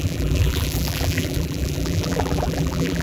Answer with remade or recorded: remade